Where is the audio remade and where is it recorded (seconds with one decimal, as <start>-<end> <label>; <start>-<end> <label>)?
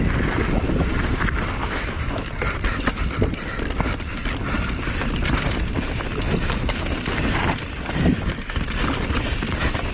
0.0-1.6 recorded; 1.6-2.3 remade; 2.3-9.9 recorded